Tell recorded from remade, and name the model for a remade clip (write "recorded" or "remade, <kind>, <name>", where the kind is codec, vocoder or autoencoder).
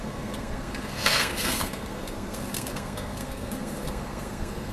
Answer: remade, codec, SNAC